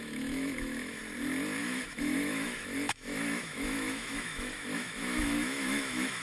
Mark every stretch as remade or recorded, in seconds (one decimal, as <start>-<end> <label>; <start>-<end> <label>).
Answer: 0.0-1.0 remade; 1.0-1.6 recorded; 1.6-6.2 remade